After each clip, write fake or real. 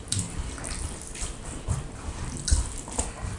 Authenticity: real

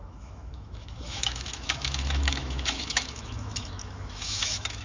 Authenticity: fake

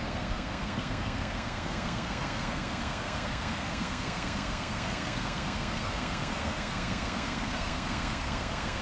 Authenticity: fake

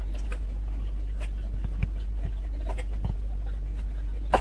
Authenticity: real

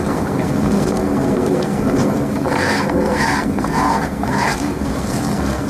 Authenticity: fake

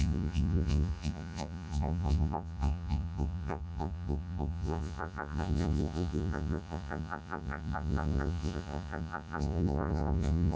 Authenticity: fake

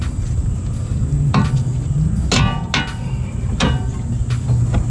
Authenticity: real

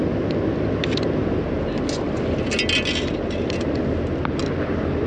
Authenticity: real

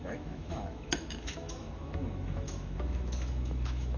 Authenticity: fake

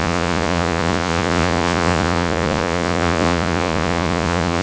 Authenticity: fake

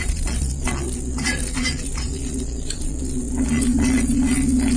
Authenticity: fake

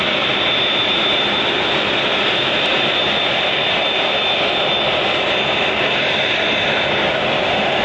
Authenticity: real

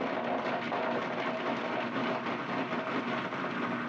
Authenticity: real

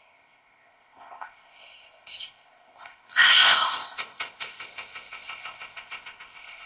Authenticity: fake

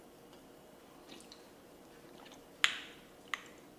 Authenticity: real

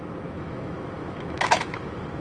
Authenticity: fake